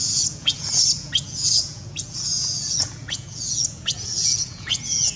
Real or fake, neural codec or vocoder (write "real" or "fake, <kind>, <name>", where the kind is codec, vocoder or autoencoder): fake, vocoder, Vocos